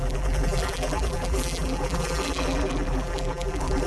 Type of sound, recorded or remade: remade